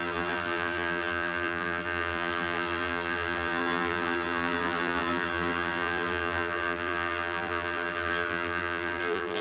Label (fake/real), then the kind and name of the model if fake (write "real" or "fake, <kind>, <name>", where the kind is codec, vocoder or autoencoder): fake, vocoder, BigVGAN v2